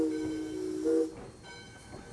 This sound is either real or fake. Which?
real